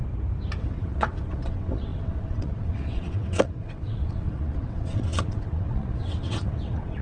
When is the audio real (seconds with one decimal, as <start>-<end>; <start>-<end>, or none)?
0.0-0.6